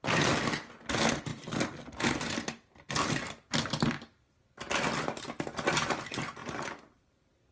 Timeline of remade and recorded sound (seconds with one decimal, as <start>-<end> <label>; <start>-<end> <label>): 0.0-7.5 recorded